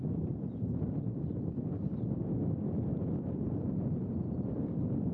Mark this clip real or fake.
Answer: real